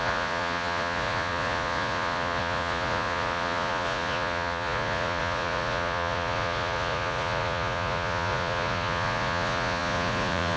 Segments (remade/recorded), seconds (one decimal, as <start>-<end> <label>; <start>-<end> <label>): 0.0-10.6 remade